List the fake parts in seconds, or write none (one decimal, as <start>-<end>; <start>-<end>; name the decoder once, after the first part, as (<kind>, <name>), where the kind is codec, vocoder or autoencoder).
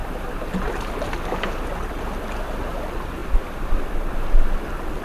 none